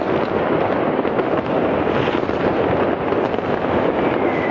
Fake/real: real